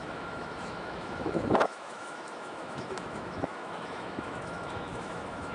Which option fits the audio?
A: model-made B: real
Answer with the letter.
A